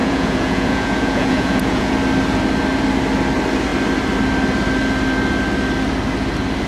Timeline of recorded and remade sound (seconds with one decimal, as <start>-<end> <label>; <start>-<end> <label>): 0.0-1.9 remade; 1.9-6.7 recorded